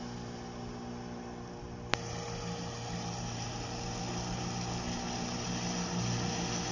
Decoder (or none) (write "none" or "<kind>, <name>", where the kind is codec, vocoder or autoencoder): none